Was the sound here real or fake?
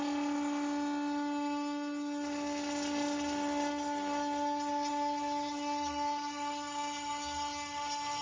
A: real